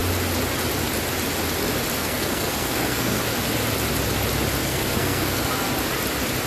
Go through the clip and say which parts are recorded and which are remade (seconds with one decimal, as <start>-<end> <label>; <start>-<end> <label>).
0.0-2.0 recorded; 2.0-3.2 remade; 3.2-4.6 recorded; 4.6-5.4 remade; 5.4-6.5 recorded